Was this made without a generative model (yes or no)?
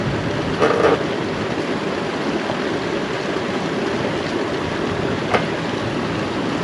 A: yes